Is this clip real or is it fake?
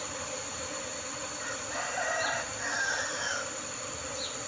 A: real